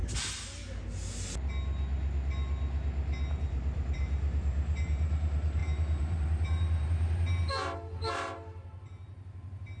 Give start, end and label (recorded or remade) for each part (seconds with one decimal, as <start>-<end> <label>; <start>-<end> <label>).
0.0-3.3 recorded; 3.3-9.8 remade